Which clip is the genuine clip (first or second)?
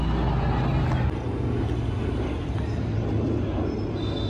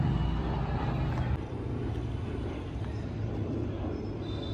first